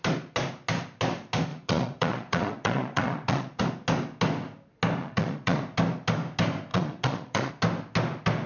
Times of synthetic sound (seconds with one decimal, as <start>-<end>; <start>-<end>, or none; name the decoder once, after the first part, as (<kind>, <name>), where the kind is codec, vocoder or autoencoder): 1.5-3.6 (vocoder, Vocos); 5.0-5.6; 6.7-7.5